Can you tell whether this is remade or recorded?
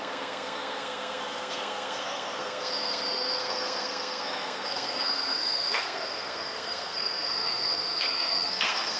remade